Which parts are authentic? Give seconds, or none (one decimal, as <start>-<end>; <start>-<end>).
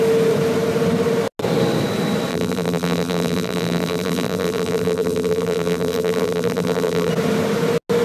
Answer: 0.0-2.3; 7.1-8.0